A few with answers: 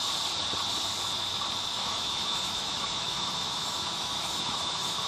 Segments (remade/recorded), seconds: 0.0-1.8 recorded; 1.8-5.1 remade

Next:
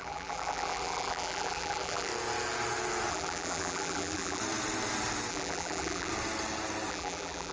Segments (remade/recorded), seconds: 0.0-2.1 remade; 2.1-3.1 recorded; 3.1-4.4 remade; 4.4-5.3 recorded; 5.3-6.1 remade; 6.1-6.9 recorded; 6.9-7.5 remade

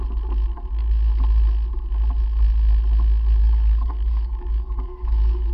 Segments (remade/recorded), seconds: 0.0-3.4 recorded; 3.4-5.5 remade

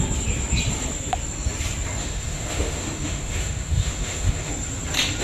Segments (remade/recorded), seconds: 0.0-2.0 recorded; 2.0-4.5 remade; 4.5-5.2 recorded

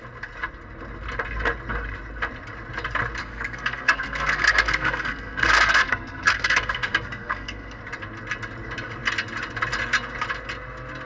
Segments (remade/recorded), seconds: 0.0-3.2 recorded; 3.2-7.8 remade; 7.8-11.1 recorded

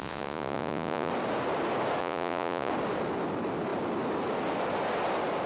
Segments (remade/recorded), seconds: 0.0-1.1 remade; 1.1-2.0 recorded; 2.0-2.7 remade; 2.7-5.5 recorded

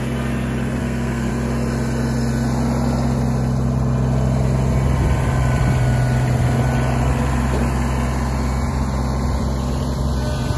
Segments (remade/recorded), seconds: 0.0-0.8 recorded; 0.8-1.3 remade; 1.3-10.6 recorded